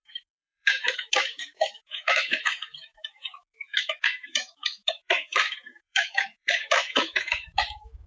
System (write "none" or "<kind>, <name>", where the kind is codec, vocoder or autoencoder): autoencoder, DAC-VAE